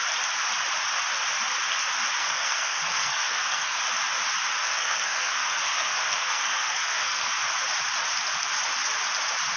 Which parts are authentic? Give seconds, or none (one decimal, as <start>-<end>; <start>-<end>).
0.0-2.2; 3.8-4.6; 7.3-9.6